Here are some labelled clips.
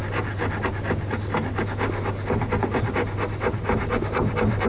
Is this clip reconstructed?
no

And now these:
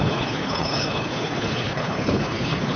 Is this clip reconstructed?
yes